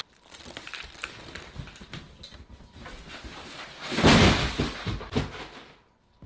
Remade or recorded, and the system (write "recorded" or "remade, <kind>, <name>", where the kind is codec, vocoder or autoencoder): recorded